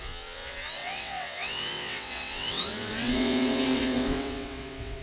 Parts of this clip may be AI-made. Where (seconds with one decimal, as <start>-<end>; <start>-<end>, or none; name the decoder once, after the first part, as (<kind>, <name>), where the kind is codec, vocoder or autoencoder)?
0.0-5.0 (vocoder, WaveNeXt)